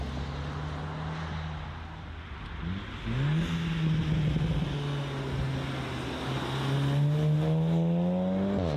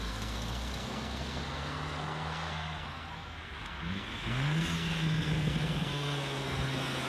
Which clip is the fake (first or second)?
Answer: second